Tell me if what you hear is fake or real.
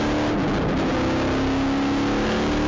real